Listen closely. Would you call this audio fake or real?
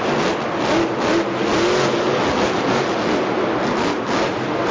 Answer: real